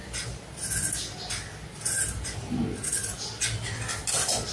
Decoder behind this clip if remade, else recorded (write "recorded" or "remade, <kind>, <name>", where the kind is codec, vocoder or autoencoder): recorded